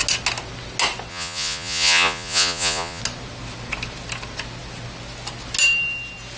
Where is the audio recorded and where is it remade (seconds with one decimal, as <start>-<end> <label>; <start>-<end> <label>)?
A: 0.0-1.1 recorded; 1.1-3.0 remade; 3.0-6.4 recorded